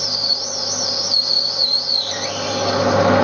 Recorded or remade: recorded